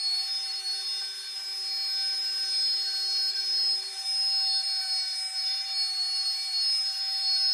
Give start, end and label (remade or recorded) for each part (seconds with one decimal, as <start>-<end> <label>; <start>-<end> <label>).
0.0-7.5 recorded